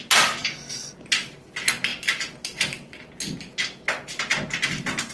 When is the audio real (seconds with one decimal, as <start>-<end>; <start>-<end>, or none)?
0.0-0.4; 0.9-5.1